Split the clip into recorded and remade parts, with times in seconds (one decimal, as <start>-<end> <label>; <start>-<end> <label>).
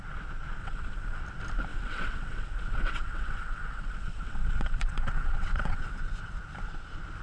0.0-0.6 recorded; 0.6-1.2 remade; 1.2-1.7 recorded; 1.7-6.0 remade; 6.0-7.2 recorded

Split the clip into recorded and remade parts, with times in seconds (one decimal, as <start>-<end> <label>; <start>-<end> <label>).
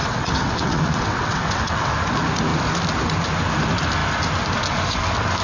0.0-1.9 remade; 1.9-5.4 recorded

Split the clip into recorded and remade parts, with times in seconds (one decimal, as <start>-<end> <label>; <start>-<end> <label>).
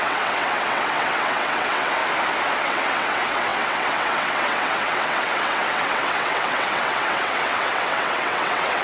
0.0-2.0 remade; 2.0-2.6 recorded; 2.6-8.8 remade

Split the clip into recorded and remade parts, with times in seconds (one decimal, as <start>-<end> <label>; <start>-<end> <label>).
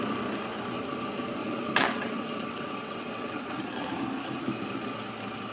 0.0-1.4 recorded; 1.4-3.9 remade; 3.9-5.5 recorded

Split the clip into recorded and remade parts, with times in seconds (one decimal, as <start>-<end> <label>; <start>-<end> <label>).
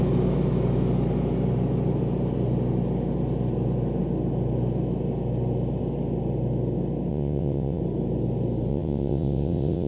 0.0-7.1 recorded; 7.1-7.8 remade; 7.8-8.7 recorded; 8.7-9.9 remade